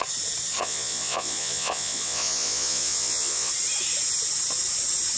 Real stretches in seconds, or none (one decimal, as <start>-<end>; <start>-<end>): 0.0-0.6; 3.5-5.2